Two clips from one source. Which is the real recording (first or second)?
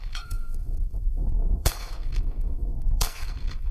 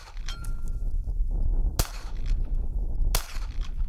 second